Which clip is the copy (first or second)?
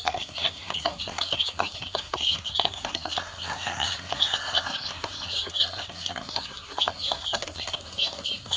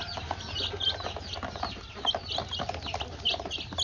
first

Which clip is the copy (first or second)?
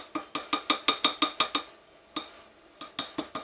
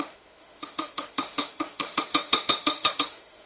second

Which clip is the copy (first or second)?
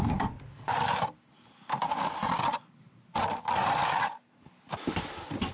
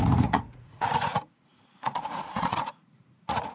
second